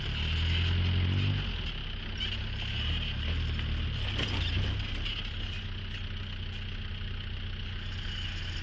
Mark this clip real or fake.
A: real